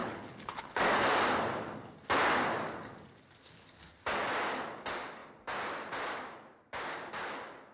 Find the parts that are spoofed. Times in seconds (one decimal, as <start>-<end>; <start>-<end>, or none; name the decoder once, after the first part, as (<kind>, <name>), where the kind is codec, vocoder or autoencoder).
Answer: 0.0-0.8 (codec, HILCodec)